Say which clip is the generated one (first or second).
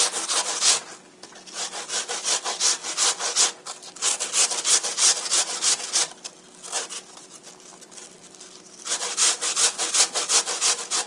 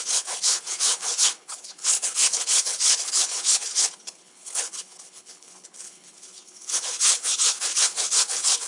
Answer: second